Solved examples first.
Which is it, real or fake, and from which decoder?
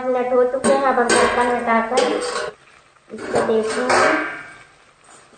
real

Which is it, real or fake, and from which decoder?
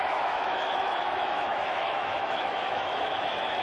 fake, autoencoder, DAC-VAE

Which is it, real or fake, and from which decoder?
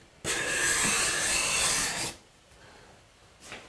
real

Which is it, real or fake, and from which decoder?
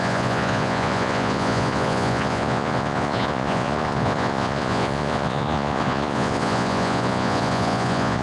fake, vocoder, Vocos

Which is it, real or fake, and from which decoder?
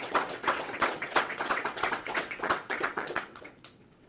fake, vocoder, WaveNeXt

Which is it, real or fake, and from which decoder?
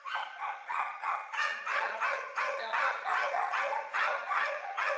fake, vocoder, HiFi-GAN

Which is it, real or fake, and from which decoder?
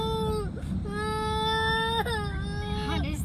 real